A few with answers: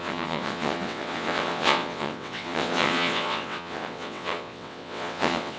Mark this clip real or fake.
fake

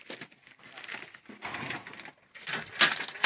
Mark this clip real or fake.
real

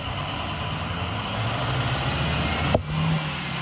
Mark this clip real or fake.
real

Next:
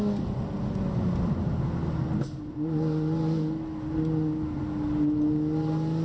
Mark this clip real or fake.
real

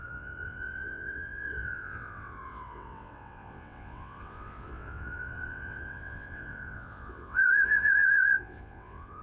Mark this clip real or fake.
fake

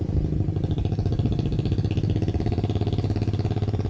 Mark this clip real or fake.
real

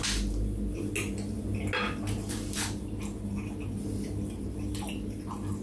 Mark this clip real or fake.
real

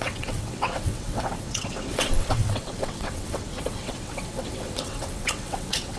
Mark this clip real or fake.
fake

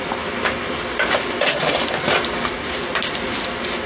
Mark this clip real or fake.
real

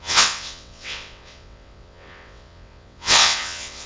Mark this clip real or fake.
fake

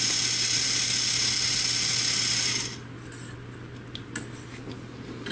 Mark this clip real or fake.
real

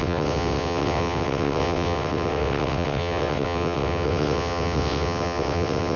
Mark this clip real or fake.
fake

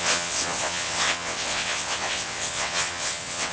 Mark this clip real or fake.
fake